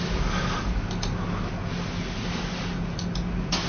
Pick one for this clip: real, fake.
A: real